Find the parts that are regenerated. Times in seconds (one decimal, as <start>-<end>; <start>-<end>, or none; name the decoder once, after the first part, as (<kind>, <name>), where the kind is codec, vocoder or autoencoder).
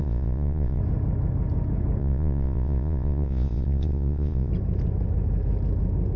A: 0.0-0.8 (vocoder, Vocos); 2.0-4.5